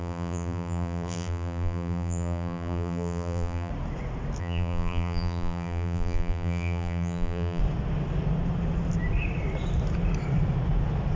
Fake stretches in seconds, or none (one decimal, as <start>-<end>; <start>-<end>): 0.0-3.7; 4.4-7.6